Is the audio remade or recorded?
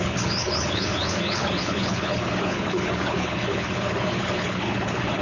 remade